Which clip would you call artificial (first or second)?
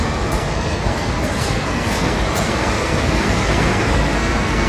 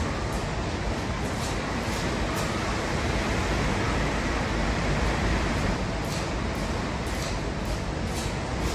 first